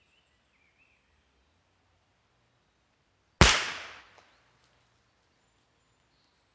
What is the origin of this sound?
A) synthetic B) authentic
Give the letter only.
B